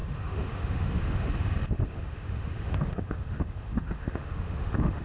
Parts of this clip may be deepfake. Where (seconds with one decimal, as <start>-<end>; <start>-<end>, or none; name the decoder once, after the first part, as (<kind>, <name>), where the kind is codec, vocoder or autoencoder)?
0.0-1.3 (autoencoder, DAC-VAE); 1.8-5.0